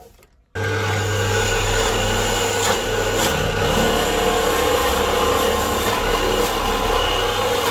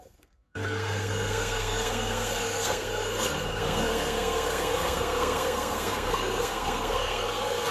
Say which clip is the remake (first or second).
second